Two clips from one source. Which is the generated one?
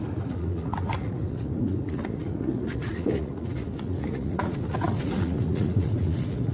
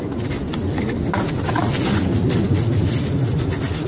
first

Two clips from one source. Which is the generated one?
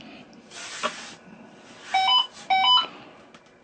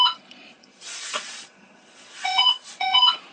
second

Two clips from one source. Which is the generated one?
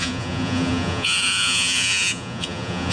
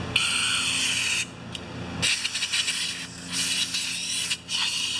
first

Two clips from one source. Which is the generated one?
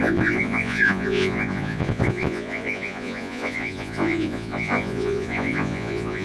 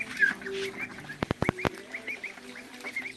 first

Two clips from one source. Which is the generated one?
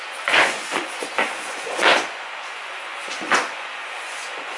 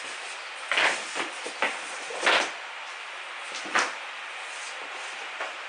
first